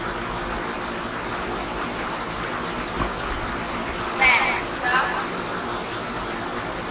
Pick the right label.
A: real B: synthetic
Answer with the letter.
A